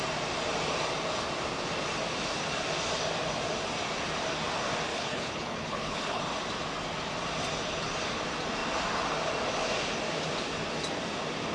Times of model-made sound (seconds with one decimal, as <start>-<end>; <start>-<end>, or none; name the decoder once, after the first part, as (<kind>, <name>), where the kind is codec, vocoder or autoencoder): 4.9-6.2 (codec, HILCodec)